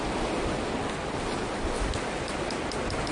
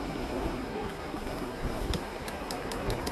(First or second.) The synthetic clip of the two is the second